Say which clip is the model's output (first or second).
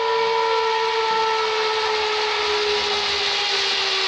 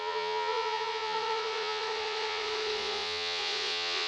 second